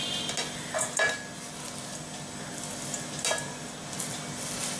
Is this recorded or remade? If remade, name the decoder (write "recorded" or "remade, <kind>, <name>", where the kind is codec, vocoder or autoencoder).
recorded